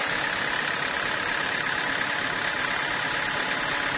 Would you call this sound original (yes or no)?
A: yes